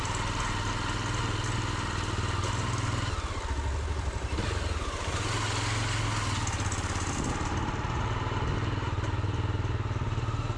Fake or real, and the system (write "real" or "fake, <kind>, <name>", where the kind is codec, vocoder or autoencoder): real